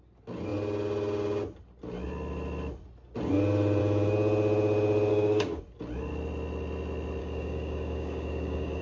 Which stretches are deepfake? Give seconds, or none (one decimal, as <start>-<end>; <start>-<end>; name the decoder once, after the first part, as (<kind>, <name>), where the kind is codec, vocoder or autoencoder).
5.1-5.6 (codec, DAC); 7.2-8.8